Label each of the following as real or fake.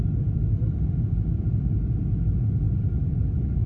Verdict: real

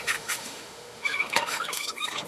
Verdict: fake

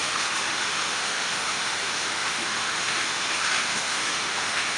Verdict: fake